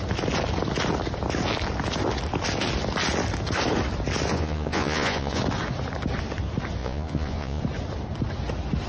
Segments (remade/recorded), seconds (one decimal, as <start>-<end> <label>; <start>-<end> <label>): 0.0-4.3 recorded; 4.3-5.4 remade; 5.4-6.8 recorded; 6.8-7.6 remade; 7.6-8.9 recorded